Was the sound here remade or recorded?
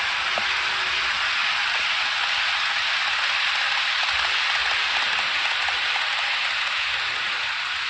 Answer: recorded